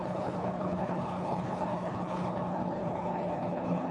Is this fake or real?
fake